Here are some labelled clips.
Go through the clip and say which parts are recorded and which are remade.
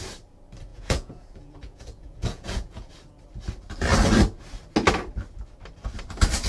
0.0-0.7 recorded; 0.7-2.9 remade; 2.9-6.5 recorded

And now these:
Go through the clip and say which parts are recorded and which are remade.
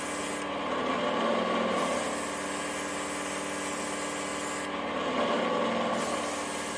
0.0-6.8 recorded